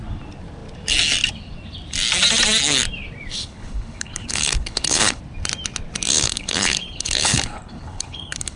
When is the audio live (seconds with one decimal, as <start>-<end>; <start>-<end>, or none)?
0.0-3.3; 5.2-6.1